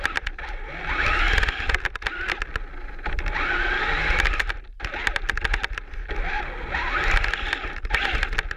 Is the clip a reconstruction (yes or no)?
no